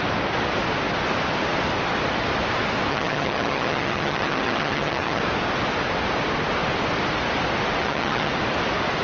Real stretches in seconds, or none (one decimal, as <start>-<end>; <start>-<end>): 0.0-2.9; 5.2-7.8; 8.3-9.0